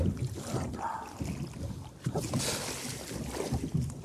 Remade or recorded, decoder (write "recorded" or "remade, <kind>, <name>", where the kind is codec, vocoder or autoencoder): recorded